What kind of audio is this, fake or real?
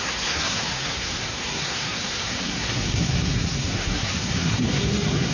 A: fake